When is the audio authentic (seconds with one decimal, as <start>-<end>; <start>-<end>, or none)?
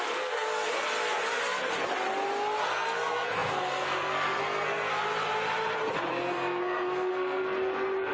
0.6-2.6; 4.9-6.1